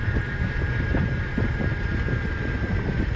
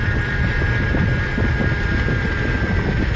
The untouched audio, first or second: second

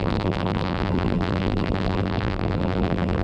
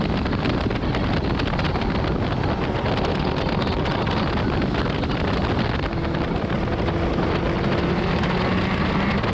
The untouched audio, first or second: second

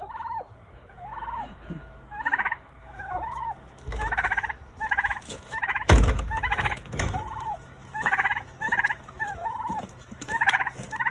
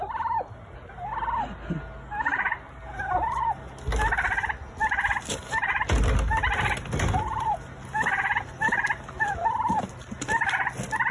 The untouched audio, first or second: second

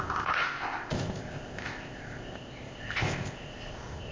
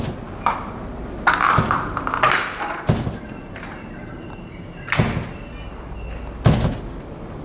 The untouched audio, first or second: second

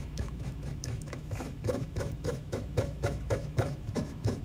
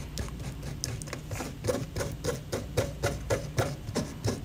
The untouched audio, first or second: second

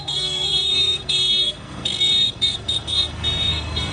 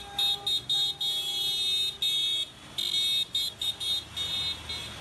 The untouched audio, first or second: second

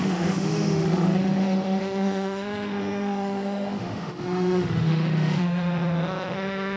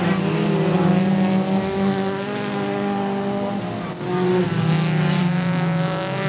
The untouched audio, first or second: second